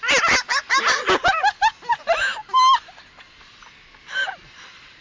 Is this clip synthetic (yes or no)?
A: no